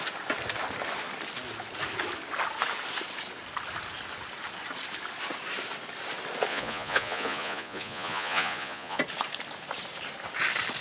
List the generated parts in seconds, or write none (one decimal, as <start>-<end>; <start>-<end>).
6.5-9.0